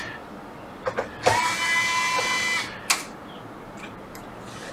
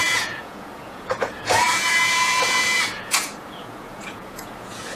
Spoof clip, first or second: second